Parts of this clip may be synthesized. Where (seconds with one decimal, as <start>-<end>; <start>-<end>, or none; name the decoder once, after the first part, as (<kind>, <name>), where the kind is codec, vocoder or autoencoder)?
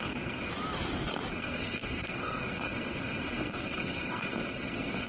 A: 0.0-0.5 (codec, SNAC); 1.3-5.1